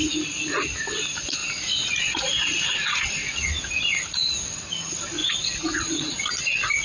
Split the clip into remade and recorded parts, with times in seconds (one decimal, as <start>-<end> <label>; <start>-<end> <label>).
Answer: 0.0-1.4 recorded; 1.4-4.3 remade; 4.3-5.2 recorded; 5.2-6.3 remade; 6.3-6.8 recorded